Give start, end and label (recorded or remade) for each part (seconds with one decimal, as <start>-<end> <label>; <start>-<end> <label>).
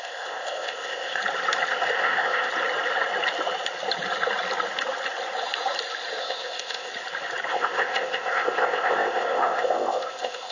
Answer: 0.0-1.2 remade; 1.2-1.9 recorded; 1.9-2.5 remade; 2.5-6.2 recorded; 6.2-6.9 remade; 6.9-7.5 recorded; 7.5-10.5 remade